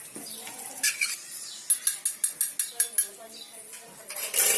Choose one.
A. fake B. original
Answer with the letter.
B